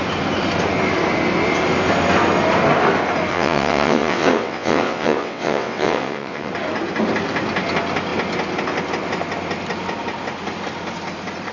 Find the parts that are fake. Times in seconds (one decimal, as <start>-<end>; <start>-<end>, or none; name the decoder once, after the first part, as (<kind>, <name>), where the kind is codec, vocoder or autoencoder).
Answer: 3.3-6.5 (vocoder, WaveNeXt)